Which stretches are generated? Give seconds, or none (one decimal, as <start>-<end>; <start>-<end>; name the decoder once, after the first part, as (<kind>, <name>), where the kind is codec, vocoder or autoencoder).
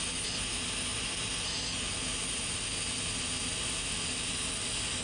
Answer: none